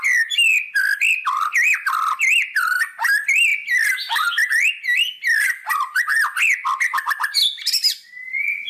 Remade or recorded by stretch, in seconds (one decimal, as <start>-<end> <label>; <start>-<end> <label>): 0.0-8.7 recorded